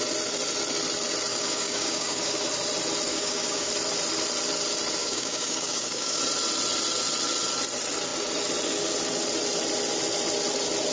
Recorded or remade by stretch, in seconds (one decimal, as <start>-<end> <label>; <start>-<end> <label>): 0.0-1.3 recorded; 1.3-2.4 remade; 2.4-3.1 recorded; 3.1-3.7 remade; 3.7-5.0 recorded; 5.0-6.2 remade; 6.2-10.9 recorded